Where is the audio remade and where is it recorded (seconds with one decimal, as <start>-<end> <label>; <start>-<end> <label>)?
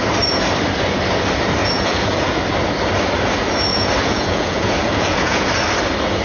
0.0-1.6 recorded; 1.6-2.4 remade; 2.4-3.7 recorded; 3.7-5.5 remade; 5.5-6.2 recorded